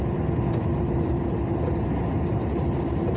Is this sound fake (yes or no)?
no